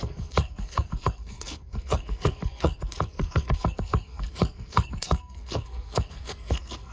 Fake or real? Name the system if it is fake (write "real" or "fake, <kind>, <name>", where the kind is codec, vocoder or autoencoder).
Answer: fake, codec, SNAC